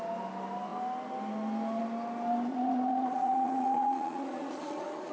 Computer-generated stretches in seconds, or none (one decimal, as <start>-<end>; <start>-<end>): 2.5-5.1